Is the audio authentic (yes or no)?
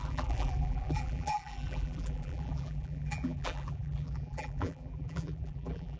no